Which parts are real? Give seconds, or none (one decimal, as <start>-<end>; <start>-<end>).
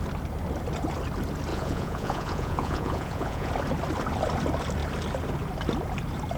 0.0-1.5; 3.5-6.4